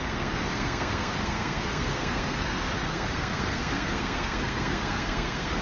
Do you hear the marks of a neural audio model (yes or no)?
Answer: yes